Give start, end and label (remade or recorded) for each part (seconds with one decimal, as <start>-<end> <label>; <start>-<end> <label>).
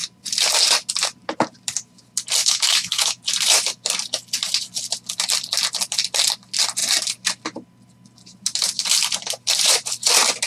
0.0-2.4 recorded; 2.4-3.2 remade; 3.2-10.5 recorded